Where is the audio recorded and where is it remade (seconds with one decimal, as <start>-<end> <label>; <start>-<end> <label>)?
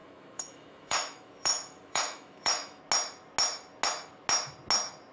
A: 0.0-2.8 remade; 2.8-5.1 recorded